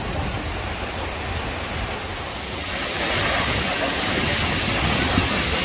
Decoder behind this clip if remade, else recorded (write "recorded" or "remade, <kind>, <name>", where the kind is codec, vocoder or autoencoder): recorded